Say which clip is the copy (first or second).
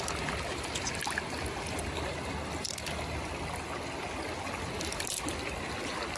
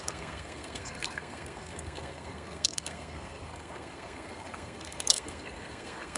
second